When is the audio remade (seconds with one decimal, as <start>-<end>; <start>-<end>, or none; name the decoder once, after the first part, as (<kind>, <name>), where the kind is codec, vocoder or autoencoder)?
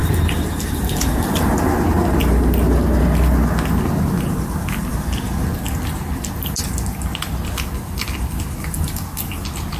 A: 0.0-1.6 (vocoder, BigVGAN v2)